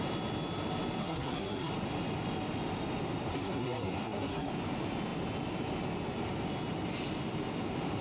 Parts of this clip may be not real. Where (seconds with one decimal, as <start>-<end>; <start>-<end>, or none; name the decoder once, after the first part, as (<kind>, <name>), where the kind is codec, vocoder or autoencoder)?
1.0-1.7 (codec, SNAC); 3.3-4.5